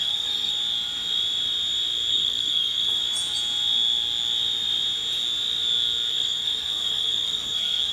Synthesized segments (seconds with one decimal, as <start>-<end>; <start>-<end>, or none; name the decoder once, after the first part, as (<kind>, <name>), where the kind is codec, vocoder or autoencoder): 0.0-0.5 (codec, SNAC); 2.1-3.0; 6.1-7.9